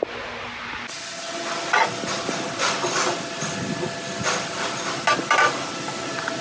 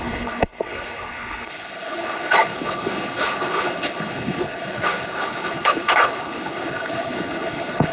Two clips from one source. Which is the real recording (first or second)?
first